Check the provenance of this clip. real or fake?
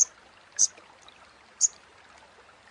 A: real